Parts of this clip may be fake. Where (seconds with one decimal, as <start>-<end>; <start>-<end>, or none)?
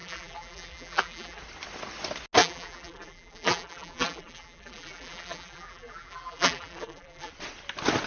0.0-1.4; 2.4-7.3